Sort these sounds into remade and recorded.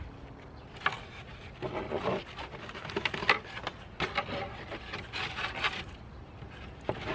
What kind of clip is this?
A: recorded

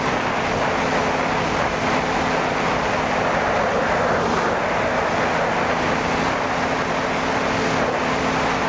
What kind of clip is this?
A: recorded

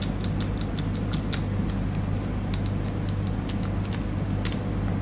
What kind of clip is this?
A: recorded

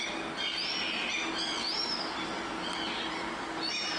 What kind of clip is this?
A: recorded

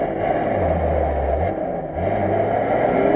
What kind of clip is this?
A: recorded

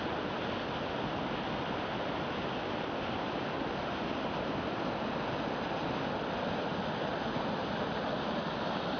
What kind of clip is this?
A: recorded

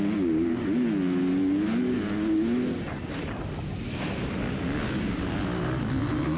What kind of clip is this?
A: recorded